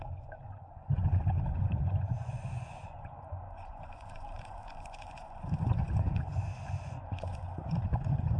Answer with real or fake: fake